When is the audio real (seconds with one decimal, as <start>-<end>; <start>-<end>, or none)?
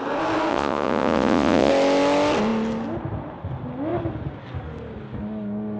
0.0-0.5; 1.7-5.8